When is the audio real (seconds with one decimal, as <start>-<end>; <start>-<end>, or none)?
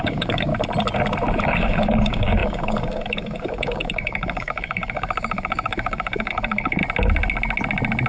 0.5-1.4; 6.8-8.1